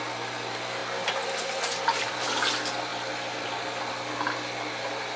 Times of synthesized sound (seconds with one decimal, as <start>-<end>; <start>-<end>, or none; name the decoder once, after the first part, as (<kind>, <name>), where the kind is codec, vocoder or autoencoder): none